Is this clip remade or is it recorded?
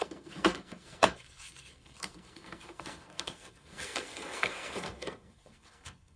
remade